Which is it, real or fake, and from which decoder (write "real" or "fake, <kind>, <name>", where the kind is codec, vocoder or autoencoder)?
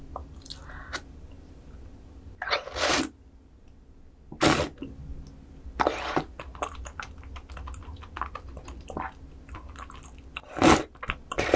real